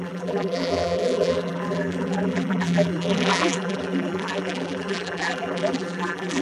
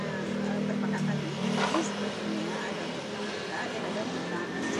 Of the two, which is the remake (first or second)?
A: first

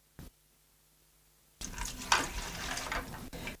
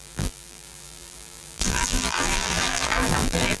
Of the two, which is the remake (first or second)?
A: second